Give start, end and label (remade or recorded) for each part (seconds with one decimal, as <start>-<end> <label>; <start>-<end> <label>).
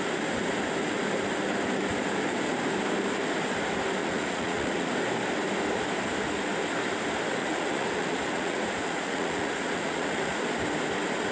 0.0-4.0 recorded; 4.0-4.9 remade; 4.9-7.4 recorded; 7.4-10.4 remade; 10.4-11.3 recorded